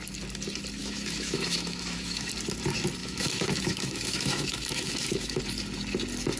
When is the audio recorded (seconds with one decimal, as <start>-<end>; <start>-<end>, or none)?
0.0-0.8; 2.3-3.0; 5.4-6.4